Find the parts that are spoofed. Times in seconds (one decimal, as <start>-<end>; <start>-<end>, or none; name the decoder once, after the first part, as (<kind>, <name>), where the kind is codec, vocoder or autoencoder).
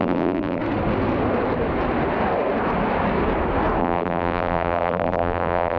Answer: 0.0-0.6 (vocoder, BigVGAN v2); 3.8-5.8